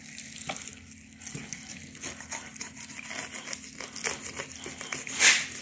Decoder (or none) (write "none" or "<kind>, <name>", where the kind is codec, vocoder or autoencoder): none